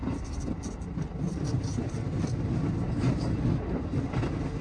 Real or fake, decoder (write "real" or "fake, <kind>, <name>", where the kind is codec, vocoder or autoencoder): real